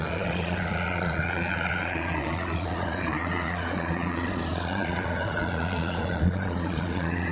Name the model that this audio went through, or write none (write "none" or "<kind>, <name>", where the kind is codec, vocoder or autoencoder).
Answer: vocoder, Vocos